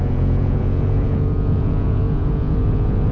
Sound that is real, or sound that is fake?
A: fake